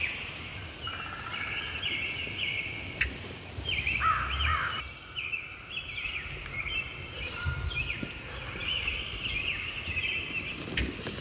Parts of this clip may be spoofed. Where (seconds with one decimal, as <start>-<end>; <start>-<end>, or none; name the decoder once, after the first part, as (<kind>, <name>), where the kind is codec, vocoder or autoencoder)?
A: 6.9-7.8 (vocoder, BigVGAN v2); 8.6-10.4